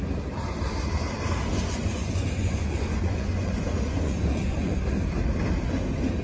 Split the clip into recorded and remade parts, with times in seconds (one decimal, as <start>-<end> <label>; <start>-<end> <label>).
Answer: 0.0-1.5 recorded; 1.5-4.8 remade; 4.8-6.2 recorded